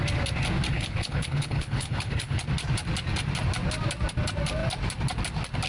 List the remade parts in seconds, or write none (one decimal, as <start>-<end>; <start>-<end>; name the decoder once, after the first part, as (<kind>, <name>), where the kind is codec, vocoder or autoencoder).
0.7-2.4 (codec, HILCodec)